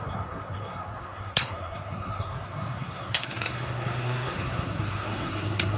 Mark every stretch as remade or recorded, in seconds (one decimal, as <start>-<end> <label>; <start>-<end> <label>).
0.0-5.8 remade